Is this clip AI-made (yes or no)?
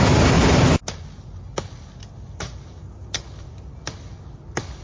no